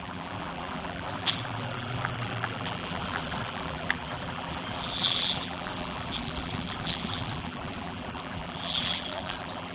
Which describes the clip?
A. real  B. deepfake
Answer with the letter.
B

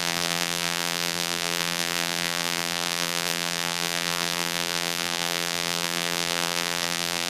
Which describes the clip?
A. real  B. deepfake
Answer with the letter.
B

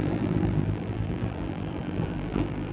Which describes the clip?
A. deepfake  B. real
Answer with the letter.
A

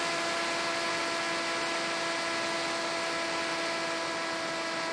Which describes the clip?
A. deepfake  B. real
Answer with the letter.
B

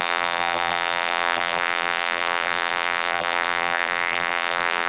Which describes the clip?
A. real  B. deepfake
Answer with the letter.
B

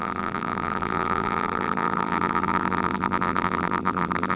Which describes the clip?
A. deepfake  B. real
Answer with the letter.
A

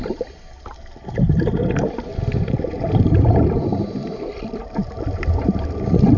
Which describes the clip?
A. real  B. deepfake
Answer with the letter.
B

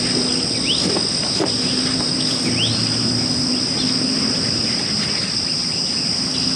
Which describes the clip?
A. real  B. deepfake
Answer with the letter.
A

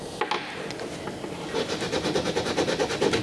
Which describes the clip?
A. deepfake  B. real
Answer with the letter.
B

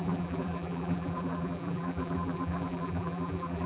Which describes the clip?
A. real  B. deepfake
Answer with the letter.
B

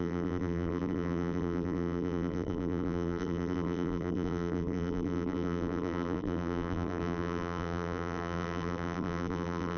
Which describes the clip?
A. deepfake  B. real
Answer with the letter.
A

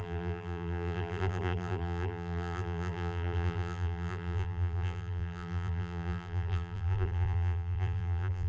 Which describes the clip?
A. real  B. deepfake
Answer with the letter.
B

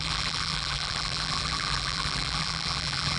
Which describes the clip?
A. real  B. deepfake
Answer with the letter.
B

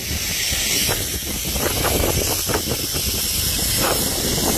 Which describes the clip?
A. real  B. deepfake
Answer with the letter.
A